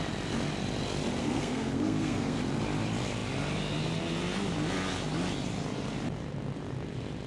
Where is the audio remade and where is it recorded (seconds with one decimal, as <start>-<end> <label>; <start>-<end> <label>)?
0.0-1.2 recorded; 1.2-2.4 remade; 2.4-7.3 recorded